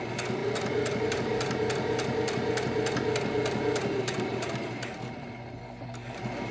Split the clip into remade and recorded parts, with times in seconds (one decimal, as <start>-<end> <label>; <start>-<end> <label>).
0.0-6.5 recorded